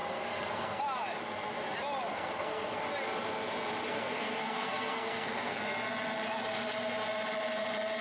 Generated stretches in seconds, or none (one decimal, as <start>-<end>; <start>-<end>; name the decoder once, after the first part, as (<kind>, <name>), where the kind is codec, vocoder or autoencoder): 0.0-0.8 (codec, SNAC); 2.1-2.8; 3.9-5.6